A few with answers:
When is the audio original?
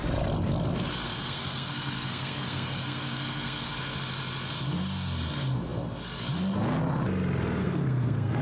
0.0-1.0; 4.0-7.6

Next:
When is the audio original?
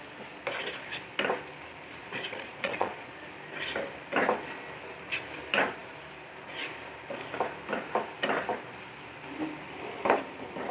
0.0-2.0; 3.1-10.7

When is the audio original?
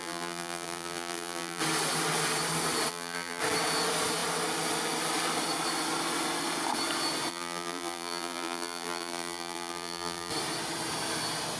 1.6-2.9; 3.4-7.3; 10.3-11.6